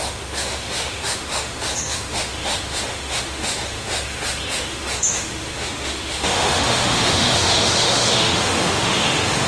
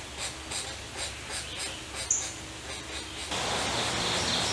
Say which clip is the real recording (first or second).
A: second